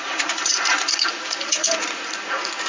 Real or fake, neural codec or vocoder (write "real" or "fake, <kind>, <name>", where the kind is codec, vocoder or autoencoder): fake, vocoder, Vocos